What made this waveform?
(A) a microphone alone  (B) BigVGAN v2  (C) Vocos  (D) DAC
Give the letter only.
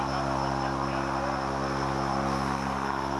A